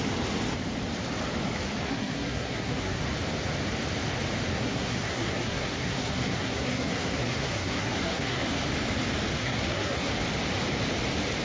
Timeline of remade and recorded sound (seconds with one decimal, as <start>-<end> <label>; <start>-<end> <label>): 0.0-1.8 recorded; 1.8-3.0 remade; 3.0-4.5 recorded; 4.5-8.6 remade; 8.6-9.4 recorded; 9.4-10.1 remade; 10.1-11.4 recorded